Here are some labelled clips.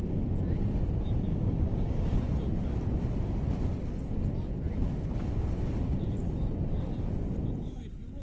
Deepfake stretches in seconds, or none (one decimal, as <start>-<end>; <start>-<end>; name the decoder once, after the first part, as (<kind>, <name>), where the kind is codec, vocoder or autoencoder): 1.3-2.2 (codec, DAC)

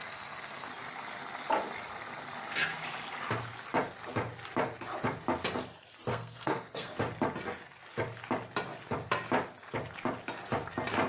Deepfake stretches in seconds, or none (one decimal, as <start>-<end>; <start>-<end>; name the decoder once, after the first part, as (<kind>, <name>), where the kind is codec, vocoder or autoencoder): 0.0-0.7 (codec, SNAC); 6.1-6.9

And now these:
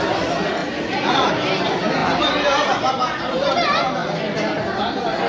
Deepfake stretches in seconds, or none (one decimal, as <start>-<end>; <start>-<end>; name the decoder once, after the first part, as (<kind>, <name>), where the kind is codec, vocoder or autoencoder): 0.6-1.3 (vocoder, Vocos)

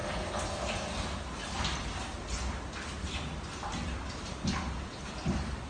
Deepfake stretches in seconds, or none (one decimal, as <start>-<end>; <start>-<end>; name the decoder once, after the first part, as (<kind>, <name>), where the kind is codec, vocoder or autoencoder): none

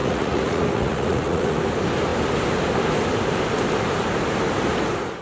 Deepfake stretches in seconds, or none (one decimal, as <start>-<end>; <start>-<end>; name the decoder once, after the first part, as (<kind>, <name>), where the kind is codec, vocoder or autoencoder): 0.0-1.6 (vocoder, Vocos)